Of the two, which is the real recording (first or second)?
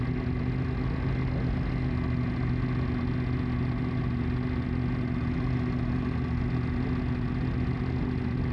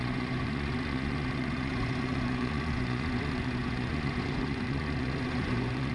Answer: first